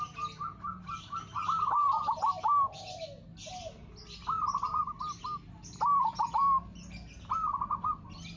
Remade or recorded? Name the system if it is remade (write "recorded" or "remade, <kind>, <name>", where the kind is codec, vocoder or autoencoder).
recorded